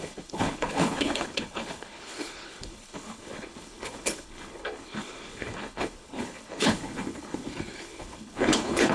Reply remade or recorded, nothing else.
remade